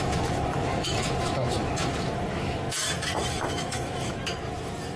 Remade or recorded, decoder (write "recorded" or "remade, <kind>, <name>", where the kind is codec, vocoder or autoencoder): remade, autoencoder, DAC-VAE